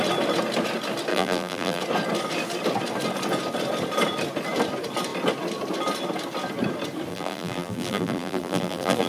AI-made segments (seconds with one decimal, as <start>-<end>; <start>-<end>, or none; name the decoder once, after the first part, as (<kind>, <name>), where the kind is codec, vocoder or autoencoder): 1.1-1.8 (vocoder, BigVGAN v2); 7.1-9.1